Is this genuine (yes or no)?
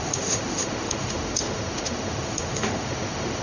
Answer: no